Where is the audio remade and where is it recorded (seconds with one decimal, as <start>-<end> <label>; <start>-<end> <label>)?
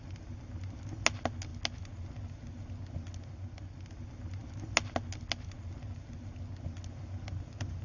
0.0-7.8 recorded